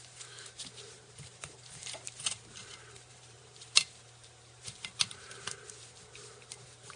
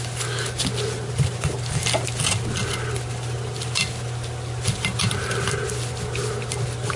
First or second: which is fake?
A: first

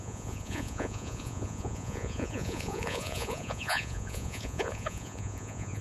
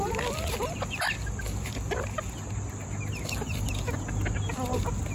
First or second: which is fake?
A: first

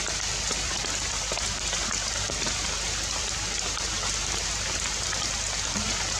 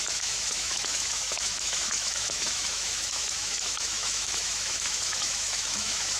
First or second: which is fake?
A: second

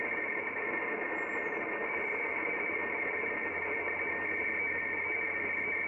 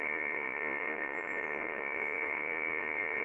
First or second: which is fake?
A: second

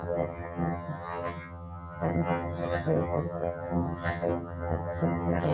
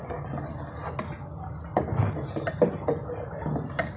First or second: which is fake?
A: first